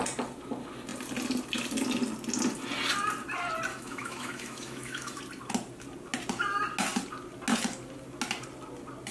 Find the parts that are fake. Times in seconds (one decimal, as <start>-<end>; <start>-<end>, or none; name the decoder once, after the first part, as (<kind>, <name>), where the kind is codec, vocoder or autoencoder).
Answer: 3.7-5.2 (autoencoder, DAC-VAE)